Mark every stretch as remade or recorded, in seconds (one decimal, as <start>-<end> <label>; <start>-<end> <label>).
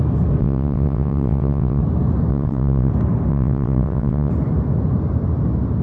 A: 0.0-0.4 recorded; 0.4-1.8 remade; 1.8-2.3 recorded; 2.3-2.9 remade; 2.9-3.3 recorded; 3.3-4.3 remade; 4.3-5.8 recorded